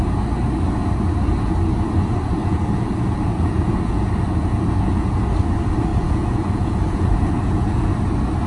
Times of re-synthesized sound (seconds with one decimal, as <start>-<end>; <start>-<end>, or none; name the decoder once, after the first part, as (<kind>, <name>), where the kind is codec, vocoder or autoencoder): 2.4-5.4 (vocoder, Vocos); 5.9-7.9